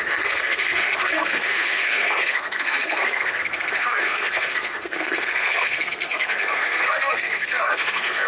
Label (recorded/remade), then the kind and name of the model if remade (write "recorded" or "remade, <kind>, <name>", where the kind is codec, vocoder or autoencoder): remade, codec, SNAC